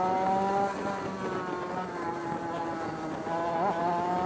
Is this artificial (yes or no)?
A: no